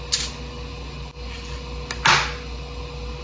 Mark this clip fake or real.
real